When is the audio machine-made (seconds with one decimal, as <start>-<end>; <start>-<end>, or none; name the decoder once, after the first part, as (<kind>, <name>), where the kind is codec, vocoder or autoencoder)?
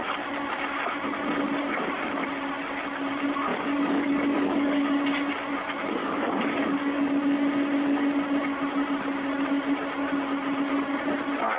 3.5-4.9 (codec, DAC); 6.0-7.1